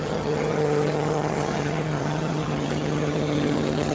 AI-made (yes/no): yes